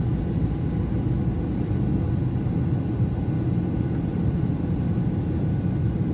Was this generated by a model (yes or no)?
no